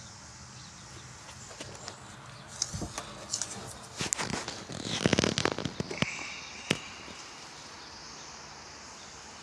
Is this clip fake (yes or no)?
no